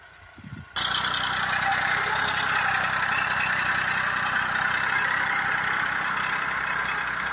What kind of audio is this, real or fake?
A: real